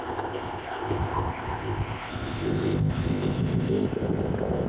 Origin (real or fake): fake